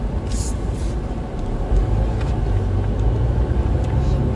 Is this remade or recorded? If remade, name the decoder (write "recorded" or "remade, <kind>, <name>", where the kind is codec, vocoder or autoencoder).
recorded